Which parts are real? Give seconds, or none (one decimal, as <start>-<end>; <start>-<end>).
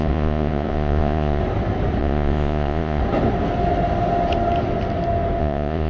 1.4-2.0; 3.0-5.4